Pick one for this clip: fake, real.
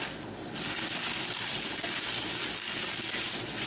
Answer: real